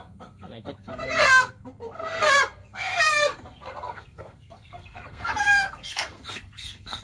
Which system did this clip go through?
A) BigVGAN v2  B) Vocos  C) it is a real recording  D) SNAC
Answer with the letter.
D